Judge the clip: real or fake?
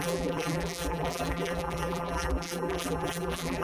fake